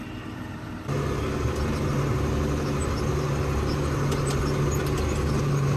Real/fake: real